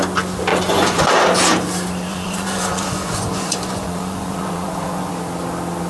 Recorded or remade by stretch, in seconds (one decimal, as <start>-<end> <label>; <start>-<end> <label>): 0.0-0.5 recorded; 0.5-1.1 remade; 1.1-2.1 recorded; 2.1-5.1 remade; 5.1-5.9 recorded